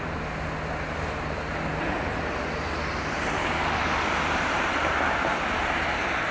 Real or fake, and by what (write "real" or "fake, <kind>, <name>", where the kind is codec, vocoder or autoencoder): real